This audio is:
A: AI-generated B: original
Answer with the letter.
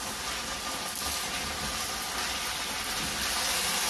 B